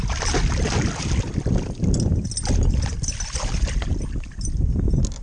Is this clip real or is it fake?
real